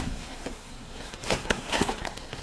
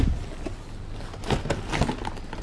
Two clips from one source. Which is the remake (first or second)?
first